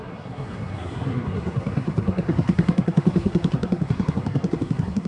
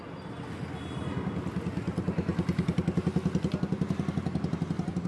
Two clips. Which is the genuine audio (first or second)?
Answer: second